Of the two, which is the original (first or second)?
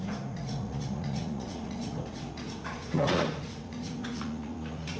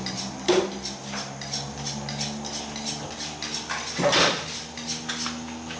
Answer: second